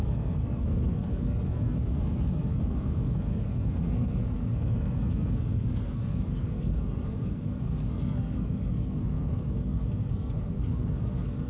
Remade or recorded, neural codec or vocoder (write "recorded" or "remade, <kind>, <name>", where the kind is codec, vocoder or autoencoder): remade, codec, SNAC